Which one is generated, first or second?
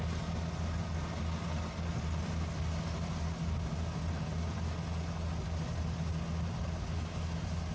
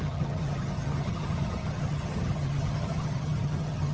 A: second